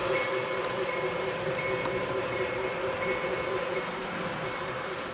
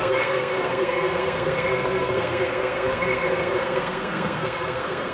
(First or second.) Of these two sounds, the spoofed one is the second